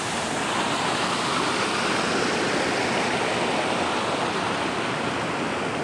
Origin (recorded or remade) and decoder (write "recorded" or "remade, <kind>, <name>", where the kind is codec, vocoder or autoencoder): recorded